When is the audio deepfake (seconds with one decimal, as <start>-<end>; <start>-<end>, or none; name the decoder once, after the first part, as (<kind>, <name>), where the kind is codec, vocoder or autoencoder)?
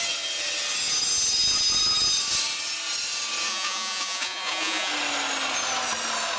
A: 3.5-4.9 (vocoder, Vocos)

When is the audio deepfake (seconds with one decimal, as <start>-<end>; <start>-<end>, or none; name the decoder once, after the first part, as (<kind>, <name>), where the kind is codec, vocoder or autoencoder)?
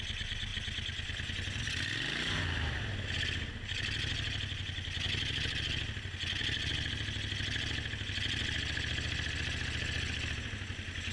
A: none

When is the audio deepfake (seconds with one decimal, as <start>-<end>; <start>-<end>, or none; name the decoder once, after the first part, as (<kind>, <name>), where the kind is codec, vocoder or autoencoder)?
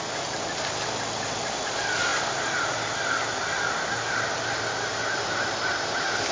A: none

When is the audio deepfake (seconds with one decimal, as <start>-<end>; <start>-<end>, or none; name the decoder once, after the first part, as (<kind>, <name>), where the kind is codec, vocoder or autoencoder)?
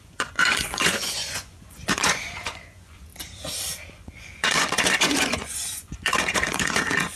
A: 0.0-3.1 (vocoder, Vocos); 3.9-7.2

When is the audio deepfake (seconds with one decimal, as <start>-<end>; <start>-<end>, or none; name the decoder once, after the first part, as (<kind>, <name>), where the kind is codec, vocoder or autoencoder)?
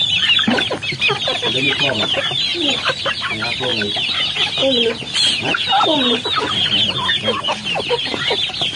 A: none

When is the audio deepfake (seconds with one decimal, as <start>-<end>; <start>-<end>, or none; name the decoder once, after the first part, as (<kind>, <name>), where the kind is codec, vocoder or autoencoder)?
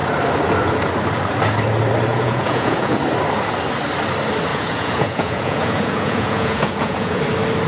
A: 2.1-3.0 (vocoder, Vocos); 4.5-7.2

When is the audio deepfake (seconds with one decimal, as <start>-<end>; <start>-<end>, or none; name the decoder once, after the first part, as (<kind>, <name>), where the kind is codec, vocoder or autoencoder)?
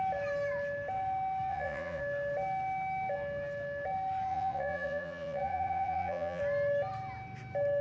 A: 1.5-2.0 (vocoder, Vocos); 4.3-6.4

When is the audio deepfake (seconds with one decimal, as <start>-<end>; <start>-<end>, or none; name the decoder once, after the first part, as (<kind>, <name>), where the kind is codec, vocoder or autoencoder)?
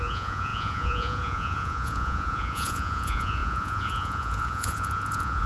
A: 0.0-5.5 (vocoder, Vocos)